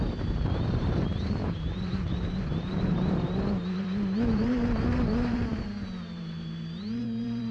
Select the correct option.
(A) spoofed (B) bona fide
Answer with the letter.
A